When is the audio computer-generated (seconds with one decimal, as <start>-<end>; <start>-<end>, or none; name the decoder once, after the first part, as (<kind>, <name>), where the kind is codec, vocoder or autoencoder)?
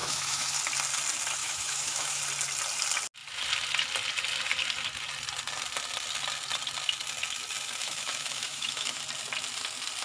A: 0.0-0.6 (autoencoder, DAC-VAE); 1.4-2.2; 7.8-9.0